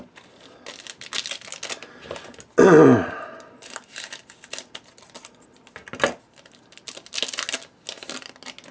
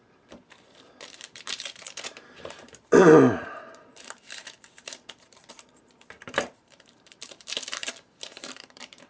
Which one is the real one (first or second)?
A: first